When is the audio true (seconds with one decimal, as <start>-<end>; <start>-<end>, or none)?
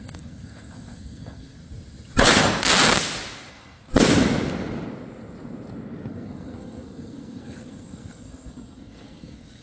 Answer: 1.6-3.5; 3.9-6.1